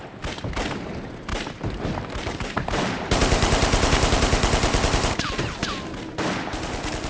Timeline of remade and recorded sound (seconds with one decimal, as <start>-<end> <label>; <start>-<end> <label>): 0.0-1.3 recorded; 1.3-5.6 remade; 5.6-7.1 recorded